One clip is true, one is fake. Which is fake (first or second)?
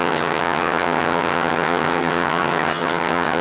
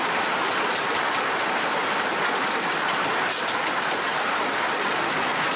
first